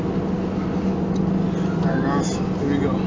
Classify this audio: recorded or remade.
recorded